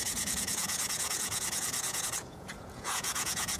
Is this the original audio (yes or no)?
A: no